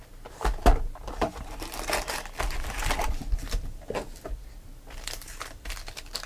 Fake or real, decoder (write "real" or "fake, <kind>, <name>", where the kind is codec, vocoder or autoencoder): real